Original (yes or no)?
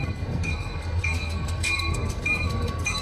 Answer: no